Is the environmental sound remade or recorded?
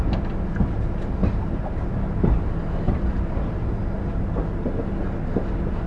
recorded